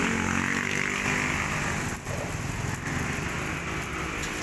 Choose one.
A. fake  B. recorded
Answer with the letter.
B